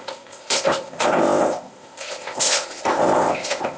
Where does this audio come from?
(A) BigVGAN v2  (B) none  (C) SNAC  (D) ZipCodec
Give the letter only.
D